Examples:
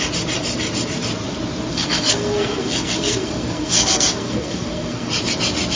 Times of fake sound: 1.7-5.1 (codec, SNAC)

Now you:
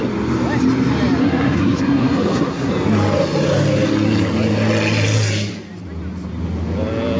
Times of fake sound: 1.2-2.7 (codec, SNAC)

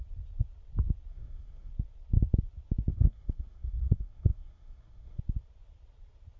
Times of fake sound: 1.1-1.7 (codec, SNAC); 2.9-5.2

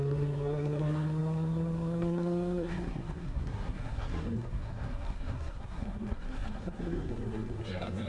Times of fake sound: 0.0-8.1 (codec, SNAC)

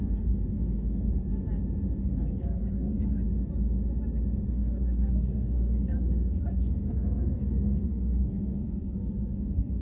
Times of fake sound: 0.0-1.4 (codec, SNAC); 2.0-3.2; 4.5-9.8